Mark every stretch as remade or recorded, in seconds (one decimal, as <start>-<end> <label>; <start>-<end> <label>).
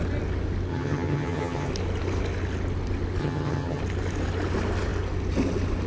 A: 0.0-0.7 recorded; 0.7-1.7 remade; 1.7-3.2 recorded; 3.2-3.8 remade; 3.8-5.9 recorded